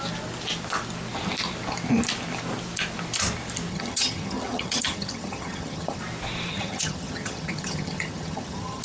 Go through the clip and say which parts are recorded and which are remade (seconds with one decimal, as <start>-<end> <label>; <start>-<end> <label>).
0.0-3.7 recorded; 3.7-6.0 remade; 6.0-6.5 recorded; 6.5-8.8 remade